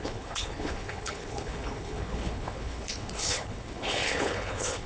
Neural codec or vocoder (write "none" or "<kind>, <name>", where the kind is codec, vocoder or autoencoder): codec, HILCodec